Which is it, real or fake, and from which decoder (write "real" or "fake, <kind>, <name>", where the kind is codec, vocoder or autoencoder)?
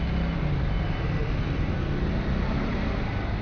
real